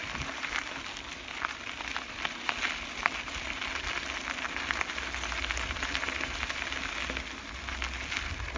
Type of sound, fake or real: real